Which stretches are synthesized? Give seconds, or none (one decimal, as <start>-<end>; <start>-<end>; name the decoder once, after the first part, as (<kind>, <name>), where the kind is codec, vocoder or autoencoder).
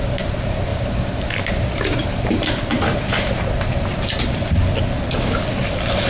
0.7-3.5 (vocoder, BigVGAN v2)